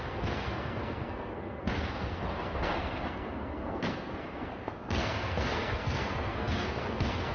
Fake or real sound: fake